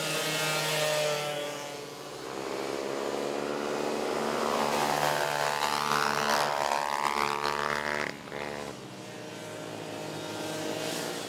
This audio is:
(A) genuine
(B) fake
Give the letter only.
A